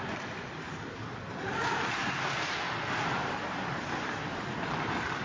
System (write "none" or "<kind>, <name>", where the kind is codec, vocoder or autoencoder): none